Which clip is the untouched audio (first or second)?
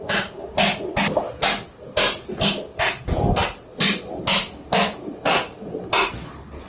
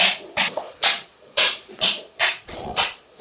first